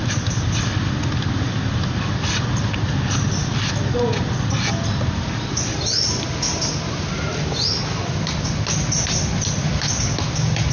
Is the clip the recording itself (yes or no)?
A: yes